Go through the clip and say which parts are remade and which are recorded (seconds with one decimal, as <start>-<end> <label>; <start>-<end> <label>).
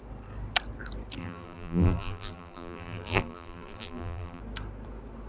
0.0-1.2 recorded; 1.2-4.4 remade; 4.4-5.3 recorded